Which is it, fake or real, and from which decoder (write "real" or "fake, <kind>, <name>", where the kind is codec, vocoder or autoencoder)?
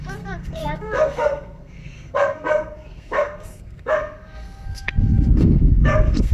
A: fake, codec, SNAC